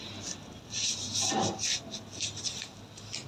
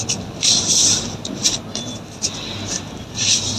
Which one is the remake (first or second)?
second